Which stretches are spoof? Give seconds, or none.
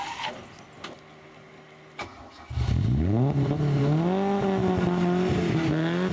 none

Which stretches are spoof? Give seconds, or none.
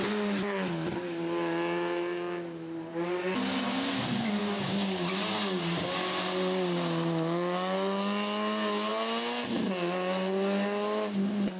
4.4-5.1 (codec, DAC)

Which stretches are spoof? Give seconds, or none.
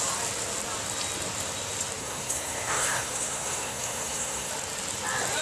2.0-4.5 (codec, SNAC)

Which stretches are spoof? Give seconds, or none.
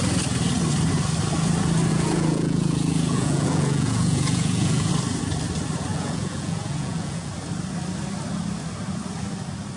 1.9-4.9 (vocoder, Vocos); 5.9-7.3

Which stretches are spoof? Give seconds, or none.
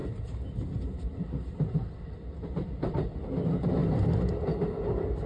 0.0-3.2 (vocoder, BigVGAN v2); 3.8-4.3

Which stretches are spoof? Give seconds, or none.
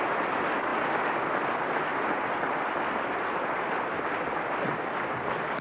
none